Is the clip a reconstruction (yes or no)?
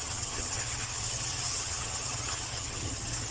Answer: yes